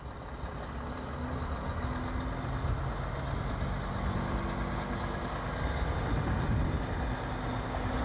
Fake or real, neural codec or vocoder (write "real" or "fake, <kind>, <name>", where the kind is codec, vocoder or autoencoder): real